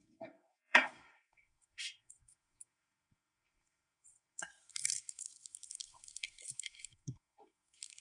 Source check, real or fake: fake